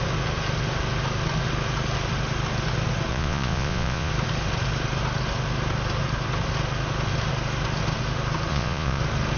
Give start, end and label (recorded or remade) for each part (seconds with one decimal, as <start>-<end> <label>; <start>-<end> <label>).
0.0-3.1 recorded; 3.1-4.1 remade; 4.1-8.5 recorded; 8.5-9.0 remade; 9.0-9.4 recorded